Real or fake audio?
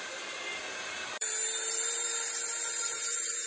fake